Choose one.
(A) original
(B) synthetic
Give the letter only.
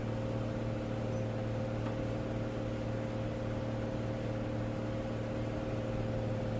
A